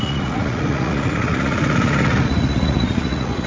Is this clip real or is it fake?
fake